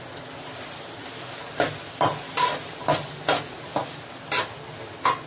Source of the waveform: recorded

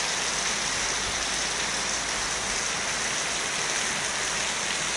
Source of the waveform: recorded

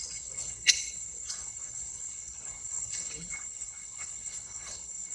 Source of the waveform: remade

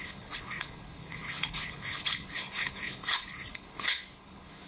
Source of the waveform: remade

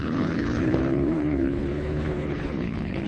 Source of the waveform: remade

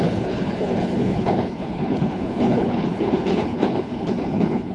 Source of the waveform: remade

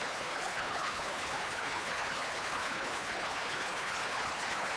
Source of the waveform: remade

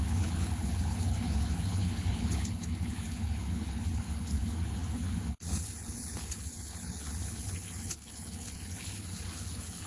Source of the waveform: remade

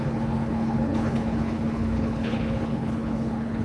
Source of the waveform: remade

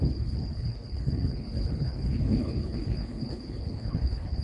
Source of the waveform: remade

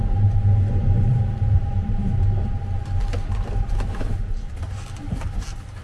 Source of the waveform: recorded